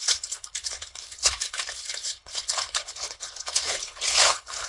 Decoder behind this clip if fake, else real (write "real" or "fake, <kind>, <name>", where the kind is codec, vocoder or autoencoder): fake, codec, HILCodec